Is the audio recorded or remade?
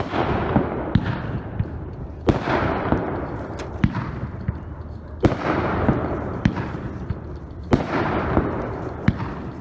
recorded